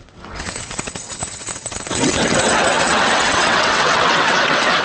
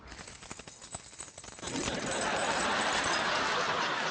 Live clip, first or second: second